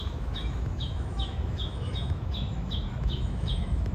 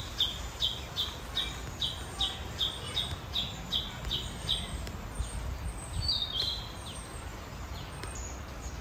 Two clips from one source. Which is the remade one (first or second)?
first